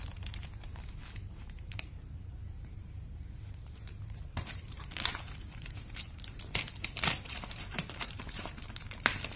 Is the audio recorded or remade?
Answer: remade